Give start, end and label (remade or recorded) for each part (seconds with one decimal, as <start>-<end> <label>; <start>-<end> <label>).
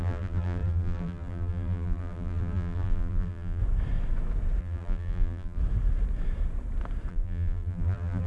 0.0-3.6 remade; 3.6-4.6 recorded; 4.6-5.6 remade; 5.6-7.1 recorded; 7.1-8.3 remade